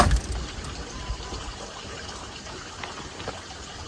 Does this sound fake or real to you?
real